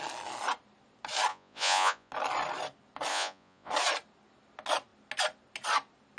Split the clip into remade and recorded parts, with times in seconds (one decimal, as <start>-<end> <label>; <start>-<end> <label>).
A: 0.0-1.3 recorded; 1.3-2.1 remade; 2.1-3.1 recorded; 3.1-3.7 remade; 3.7-6.2 recorded